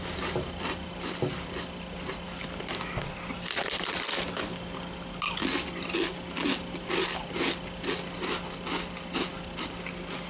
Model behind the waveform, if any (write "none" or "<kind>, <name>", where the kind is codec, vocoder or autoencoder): none